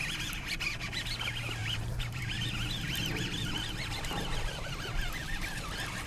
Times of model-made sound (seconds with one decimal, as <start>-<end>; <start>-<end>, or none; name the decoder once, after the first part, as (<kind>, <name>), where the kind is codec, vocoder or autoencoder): 1.6-2.2 (vocoder, BigVGAN v2)